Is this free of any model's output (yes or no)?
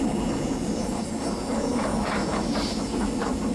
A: no